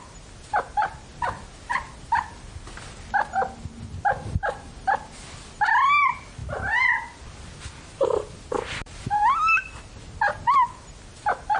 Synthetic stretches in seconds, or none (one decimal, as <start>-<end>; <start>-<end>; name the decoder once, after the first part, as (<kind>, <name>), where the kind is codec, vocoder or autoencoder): none